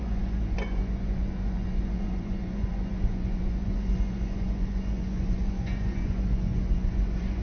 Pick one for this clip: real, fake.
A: fake